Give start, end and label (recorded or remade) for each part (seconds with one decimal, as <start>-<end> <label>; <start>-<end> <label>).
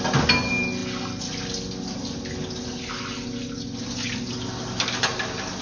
0.0-5.6 recorded